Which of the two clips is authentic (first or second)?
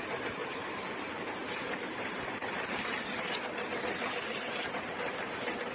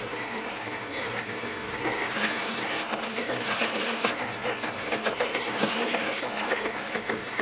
first